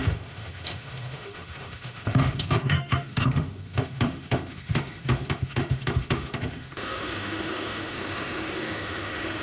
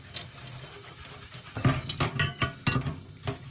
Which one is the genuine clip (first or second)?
second